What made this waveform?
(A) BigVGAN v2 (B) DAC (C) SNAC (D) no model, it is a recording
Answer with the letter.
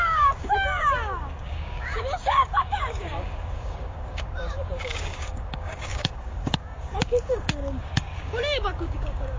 B